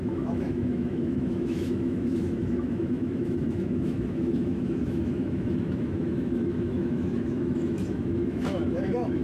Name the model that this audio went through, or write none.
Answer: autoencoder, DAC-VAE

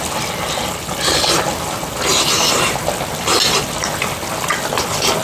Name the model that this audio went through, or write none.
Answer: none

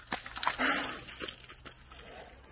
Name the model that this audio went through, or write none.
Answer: none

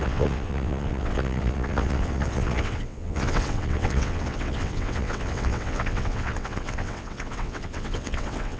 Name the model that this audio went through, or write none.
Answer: vocoder, WaveNeXt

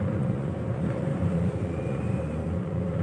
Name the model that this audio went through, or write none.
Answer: vocoder, Vocos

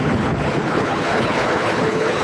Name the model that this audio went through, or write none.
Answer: codec, HILCodec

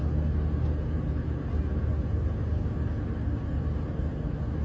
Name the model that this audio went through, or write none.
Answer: none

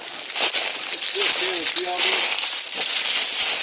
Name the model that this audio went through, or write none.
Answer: none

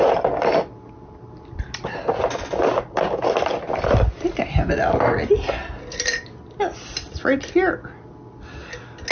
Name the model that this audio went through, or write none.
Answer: none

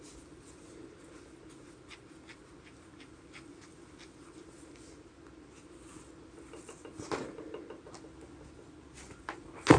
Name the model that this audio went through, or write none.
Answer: none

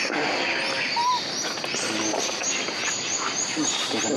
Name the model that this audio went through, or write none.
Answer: none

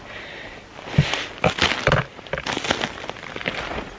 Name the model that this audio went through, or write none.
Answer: none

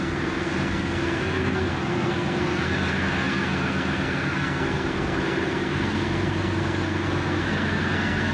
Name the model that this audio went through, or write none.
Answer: codec, SNAC